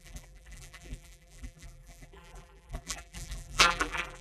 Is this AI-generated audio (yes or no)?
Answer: yes